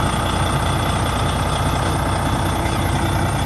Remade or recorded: recorded